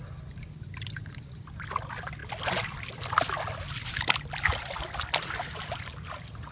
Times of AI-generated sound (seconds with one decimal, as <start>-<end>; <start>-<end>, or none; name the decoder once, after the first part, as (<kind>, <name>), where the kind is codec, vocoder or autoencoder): none